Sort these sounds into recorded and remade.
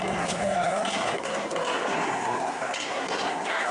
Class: remade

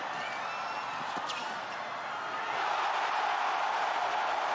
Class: recorded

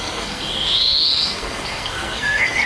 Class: remade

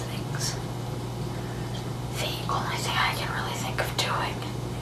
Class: recorded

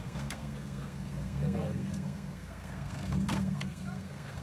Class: remade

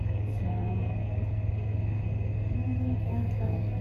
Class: remade